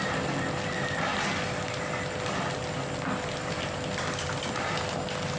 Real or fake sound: real